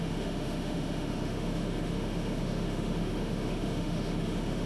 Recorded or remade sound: remade